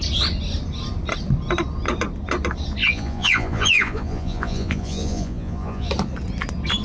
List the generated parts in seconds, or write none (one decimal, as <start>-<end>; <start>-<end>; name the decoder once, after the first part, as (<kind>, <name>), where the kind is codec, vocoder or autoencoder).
2.8-5.9 (vocoder, Vocos)